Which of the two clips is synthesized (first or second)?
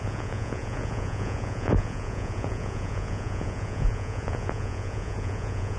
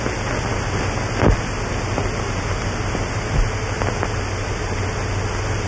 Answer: first